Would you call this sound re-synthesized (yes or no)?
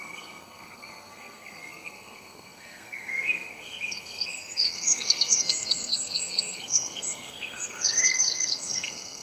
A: yes